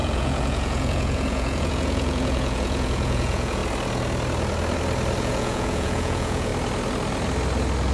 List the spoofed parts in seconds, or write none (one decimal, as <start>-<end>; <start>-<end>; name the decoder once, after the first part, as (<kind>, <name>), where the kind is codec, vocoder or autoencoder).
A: 0.0-3.6 (vocoder, Vocos); 5.2-6.5